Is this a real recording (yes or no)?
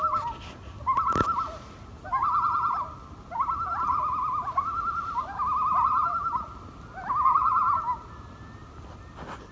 yes